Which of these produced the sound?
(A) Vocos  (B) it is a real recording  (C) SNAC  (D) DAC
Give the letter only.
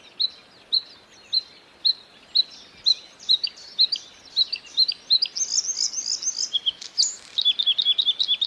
B